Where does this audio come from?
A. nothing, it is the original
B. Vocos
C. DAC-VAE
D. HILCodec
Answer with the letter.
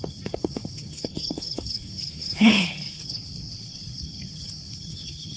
D